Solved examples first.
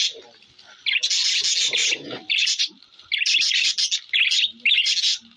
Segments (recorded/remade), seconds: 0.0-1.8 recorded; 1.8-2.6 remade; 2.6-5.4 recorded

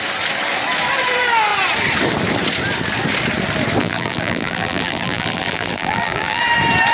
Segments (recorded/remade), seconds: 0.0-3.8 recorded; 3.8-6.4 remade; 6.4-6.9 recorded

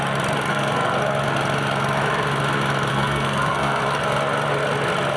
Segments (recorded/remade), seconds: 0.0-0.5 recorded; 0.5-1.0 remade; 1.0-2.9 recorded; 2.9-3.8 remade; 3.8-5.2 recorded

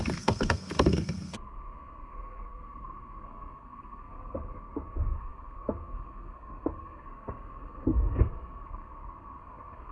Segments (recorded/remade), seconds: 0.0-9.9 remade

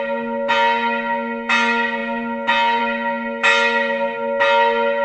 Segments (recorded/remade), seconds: 0.0-5.0 recorded

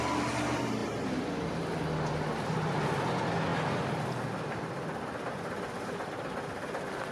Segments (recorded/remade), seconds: 0.0-7.1 recorded

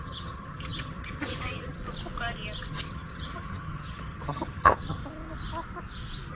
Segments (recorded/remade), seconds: 0.0-1.8 remade; 1.8-2.7 recorded; 2.7-5.0 remade; 5.0-6.3 recorded

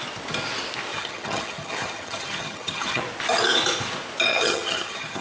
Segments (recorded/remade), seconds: 0.0-0.9 recorded; 0.9-3.0 remade; 3.0-4.3 recorded; 4.3-5.2 remade